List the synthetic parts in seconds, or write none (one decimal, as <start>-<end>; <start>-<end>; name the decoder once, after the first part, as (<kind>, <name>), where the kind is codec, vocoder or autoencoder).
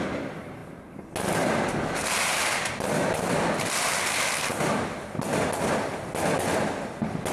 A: none